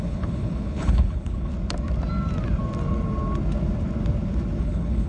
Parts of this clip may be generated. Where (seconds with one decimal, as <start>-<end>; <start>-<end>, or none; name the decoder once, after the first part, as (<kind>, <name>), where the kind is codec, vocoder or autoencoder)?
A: 0.0-1.5 (codec, HILCodec); 4.6-5.1